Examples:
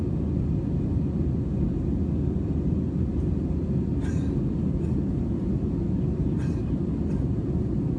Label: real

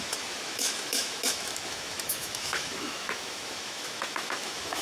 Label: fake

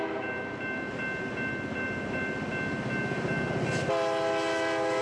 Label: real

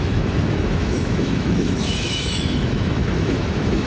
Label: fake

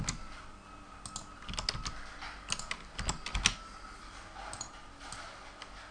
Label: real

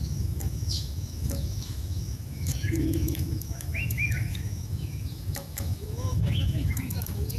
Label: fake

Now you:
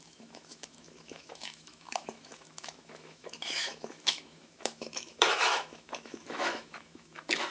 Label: fake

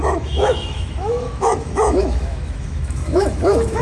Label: fake